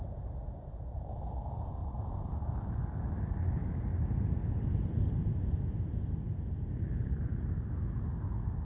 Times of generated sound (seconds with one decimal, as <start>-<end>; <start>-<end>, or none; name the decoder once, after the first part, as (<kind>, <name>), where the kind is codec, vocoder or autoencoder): 1.8-2.3 (vocoder, BigVGAN v2)